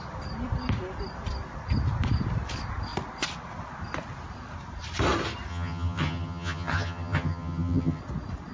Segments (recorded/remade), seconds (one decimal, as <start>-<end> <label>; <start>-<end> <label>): 0.0-5.5 recorded; 5.5-8.0 remade; 8.0-8.5 recorded